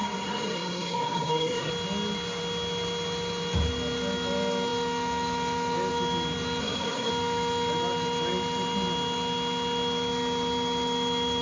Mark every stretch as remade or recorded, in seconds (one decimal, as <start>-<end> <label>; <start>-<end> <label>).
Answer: 0.0-1.7 remade; 1.7-6.6 recorded; 6.6-7.1 remade; 7.1-11.4 recorded

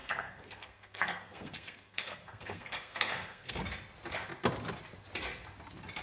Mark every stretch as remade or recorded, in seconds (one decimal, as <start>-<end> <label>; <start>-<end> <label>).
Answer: 0.0-3.6 remade; 3.6-6.0 recorded

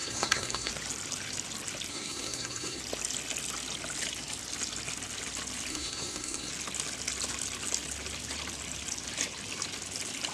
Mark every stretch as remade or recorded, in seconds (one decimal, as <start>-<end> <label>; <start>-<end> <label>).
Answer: 0.0-0.7 remade; 0.7-1.9 recorded; 1.9-2.8 remade; 2.8-5.7 recorded; 5.7-6.5 remade; 6.5-10.3 recorded

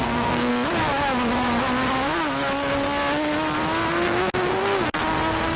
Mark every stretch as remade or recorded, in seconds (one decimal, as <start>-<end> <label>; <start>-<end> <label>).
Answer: 0.0-0.5 remade; 0.5-3.9 recorded; 3.9-5.6 remade

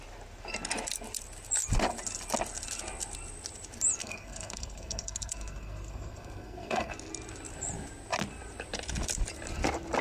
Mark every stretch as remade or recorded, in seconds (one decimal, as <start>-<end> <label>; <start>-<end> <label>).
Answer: 0.0-4.0 recorded; 4.0-6.9 remade; 6.9-10.0 recorded

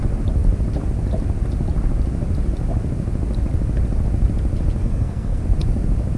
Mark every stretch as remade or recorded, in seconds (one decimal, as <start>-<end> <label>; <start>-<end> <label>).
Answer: 0.0-4.8 recorded; 4.8-5.4 remade; 5.4-6.2 recorded